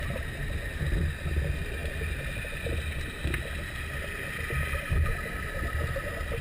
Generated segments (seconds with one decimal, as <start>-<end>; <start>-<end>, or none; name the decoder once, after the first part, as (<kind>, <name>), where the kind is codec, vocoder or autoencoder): none